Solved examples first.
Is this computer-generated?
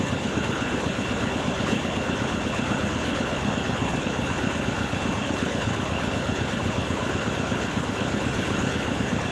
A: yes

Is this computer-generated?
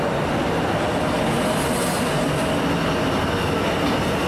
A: no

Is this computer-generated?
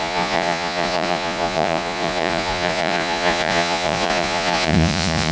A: yes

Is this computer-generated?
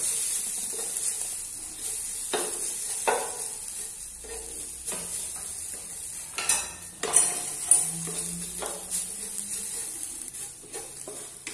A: no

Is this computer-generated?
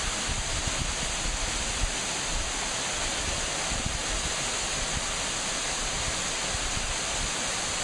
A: no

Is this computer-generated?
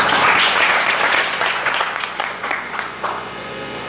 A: yes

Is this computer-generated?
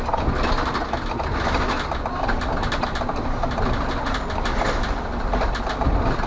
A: no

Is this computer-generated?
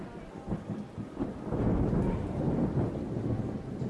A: no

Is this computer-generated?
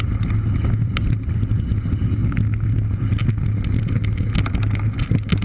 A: no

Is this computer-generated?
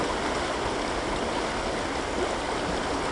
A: no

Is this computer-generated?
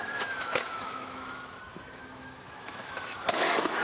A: yes